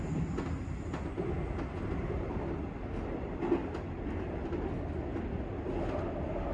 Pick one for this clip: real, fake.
real